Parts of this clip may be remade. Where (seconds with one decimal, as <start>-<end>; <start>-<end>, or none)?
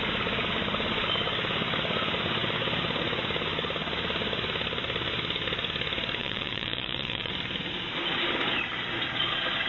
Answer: 6.2-7.3